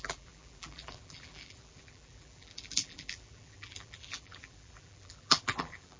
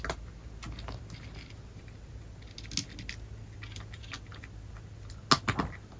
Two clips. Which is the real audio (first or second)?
second